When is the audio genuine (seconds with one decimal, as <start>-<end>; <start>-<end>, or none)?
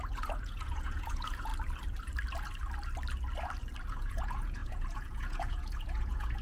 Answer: 1.5-3.9